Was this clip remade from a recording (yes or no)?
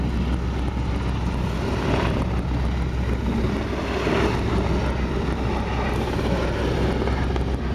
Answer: no